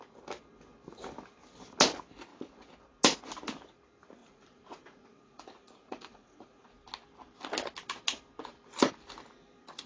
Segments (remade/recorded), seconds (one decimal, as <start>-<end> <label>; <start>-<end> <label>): 0.0-4.2 recorded; 4.2-6.7 remade; 6.7-9.9 recorded